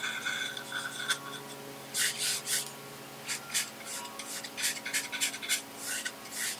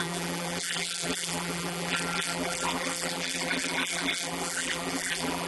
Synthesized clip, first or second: second